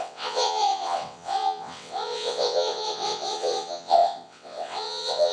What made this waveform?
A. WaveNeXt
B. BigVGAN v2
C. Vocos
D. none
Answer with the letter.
A